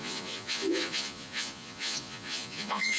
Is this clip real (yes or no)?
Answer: no